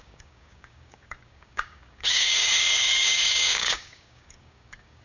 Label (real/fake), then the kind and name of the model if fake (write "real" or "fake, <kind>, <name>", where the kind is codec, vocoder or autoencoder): fake, codec, DAC